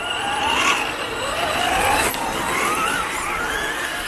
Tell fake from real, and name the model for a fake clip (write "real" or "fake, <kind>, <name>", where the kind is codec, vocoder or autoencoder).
real